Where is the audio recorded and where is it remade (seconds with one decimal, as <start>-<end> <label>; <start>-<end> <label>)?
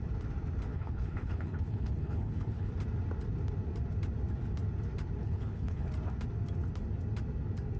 0.0-0.7 recorded; 0.7-2.7 remade; 2.7-5.2 recorded; 5.2-5.9 remade; 5.9-7.8 recorded